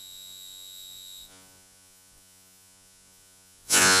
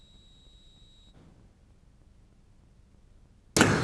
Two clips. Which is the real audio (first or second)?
second